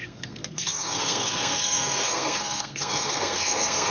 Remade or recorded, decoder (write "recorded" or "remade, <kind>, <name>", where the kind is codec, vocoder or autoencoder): remade, codec, SNAC